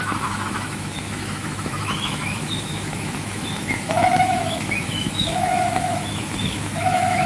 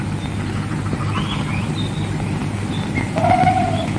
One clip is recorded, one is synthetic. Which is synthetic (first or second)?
first